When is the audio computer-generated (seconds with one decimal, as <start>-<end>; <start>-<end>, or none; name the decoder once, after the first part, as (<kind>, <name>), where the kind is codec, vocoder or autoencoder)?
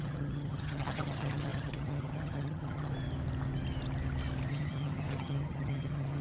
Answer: 0.0-2.9 (vocoder, HiFi-GAN); 4.5-6.2